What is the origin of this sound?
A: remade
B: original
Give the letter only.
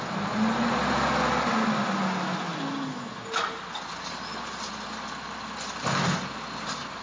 B